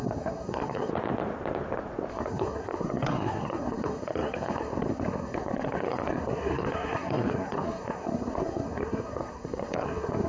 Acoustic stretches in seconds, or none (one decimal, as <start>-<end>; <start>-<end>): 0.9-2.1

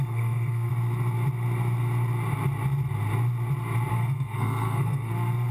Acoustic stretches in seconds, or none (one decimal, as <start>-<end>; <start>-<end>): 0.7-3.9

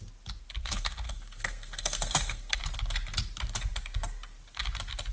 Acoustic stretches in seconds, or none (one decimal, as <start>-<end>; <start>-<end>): 0.0-0.6; 2.6-5.1

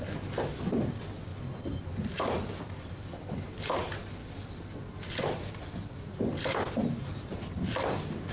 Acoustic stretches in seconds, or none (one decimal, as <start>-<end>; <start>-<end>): 0.0-8.3